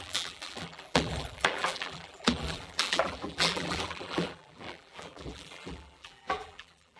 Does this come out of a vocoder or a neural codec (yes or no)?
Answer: yes